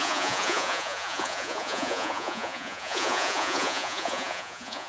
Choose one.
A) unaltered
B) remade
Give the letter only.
B